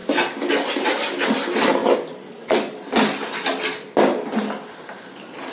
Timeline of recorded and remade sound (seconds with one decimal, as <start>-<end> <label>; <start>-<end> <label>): 0.0-5.5 recorded